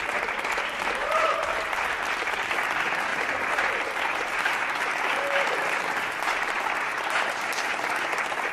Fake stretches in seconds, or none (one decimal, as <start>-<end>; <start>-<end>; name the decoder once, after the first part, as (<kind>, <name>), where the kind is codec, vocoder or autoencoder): 1.0-1.9 (vocoder, BigVGAN v2); 3.1-8.1